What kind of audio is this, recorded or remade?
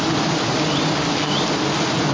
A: recorded